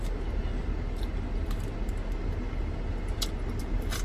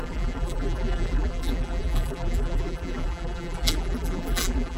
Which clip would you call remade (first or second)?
second